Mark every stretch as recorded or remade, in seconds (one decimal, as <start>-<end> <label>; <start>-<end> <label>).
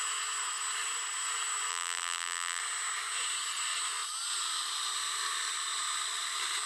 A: 0.0-1.7 recorded; 1.7-2.6 remade; 2.6-6.7 recorded